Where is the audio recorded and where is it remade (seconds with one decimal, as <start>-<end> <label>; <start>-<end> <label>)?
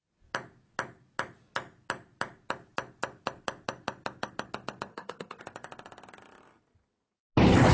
0.0-4.9 recorded; 4.9-5.4 remade; 5.4-7.7 recorded